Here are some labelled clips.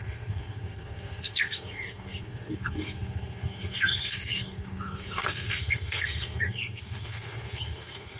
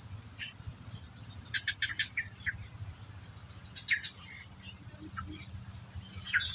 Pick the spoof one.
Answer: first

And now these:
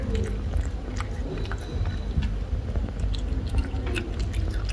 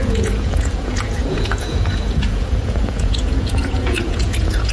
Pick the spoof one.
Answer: second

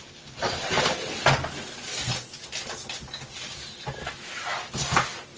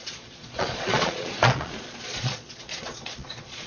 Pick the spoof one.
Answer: second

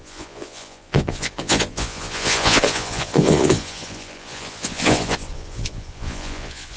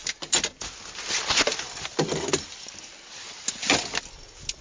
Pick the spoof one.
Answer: first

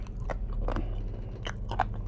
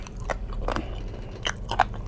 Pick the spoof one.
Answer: second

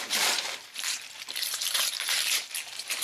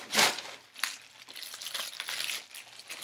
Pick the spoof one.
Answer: first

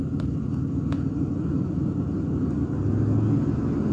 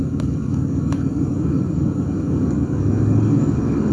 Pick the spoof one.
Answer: second